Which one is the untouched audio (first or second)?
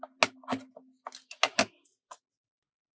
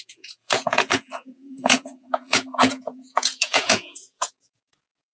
first